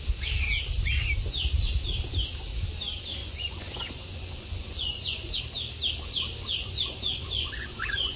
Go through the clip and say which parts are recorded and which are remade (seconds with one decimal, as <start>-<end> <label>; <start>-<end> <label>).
0.0-3.2 recorded; 3.2-5.4 remade; 5.4-6.3 recorded; 6.3-8.2 remade